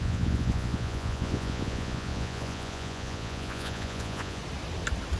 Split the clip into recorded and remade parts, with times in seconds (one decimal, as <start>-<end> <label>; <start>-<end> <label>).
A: 0.0-4.4 remade; 4.4-5.2 recorded